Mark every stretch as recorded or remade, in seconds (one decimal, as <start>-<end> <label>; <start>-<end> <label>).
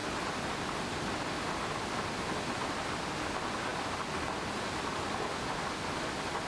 0.0-6.5 recorded